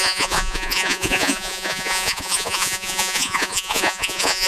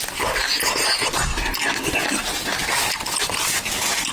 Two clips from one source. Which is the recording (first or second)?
second